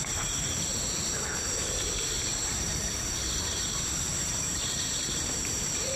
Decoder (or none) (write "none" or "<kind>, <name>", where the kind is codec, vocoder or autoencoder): vocoder, BigVGAN v2